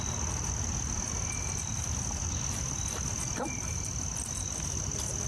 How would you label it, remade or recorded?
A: recorded